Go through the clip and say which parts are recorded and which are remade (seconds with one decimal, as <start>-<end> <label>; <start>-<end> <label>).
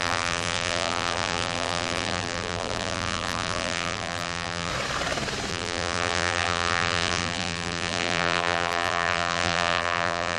0.0-4.7 remade; 4.7-5.5 recorded; 5.5-10.4 remade